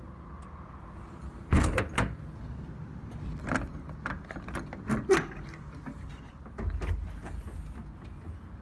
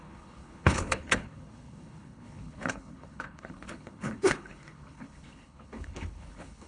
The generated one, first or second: second